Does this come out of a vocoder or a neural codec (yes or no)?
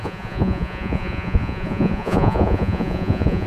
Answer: yes